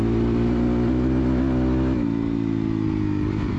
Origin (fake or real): real